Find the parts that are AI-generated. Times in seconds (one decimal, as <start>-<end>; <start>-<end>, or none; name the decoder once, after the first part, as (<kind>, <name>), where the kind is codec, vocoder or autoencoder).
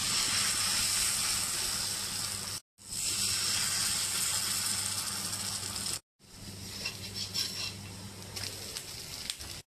none